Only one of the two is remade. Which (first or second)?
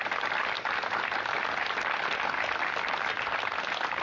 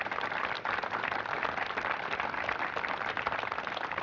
second